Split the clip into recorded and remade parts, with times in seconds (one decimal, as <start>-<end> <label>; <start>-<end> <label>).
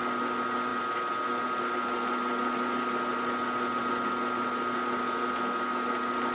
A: 0.0-6.3 recorded